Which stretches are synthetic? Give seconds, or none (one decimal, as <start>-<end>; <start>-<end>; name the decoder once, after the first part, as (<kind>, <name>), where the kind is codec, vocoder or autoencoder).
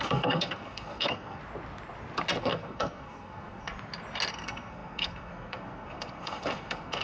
0.0-1.4 (codec, SNAC); 2.4-3.7; 4.3-7.0